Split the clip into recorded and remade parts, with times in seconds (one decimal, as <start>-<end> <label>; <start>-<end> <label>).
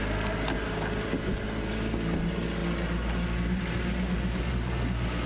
0.0-5.3 recorded